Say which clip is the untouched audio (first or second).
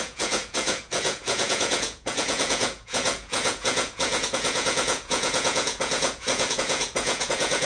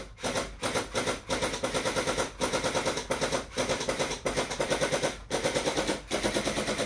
second